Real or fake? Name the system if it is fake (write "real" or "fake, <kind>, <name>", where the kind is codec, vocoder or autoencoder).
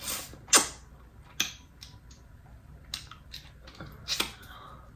real